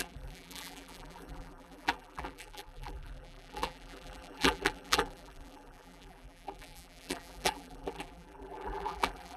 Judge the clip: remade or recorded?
remade